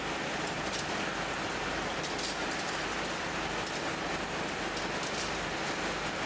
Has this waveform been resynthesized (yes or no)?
no